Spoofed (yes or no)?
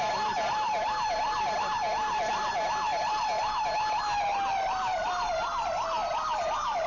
no